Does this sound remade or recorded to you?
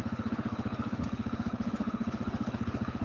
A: remade